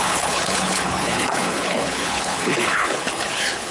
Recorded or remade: remade